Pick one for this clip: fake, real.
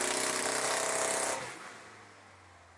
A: real